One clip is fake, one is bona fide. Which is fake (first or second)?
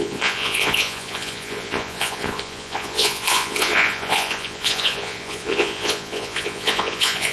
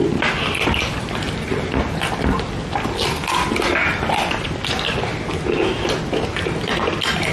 first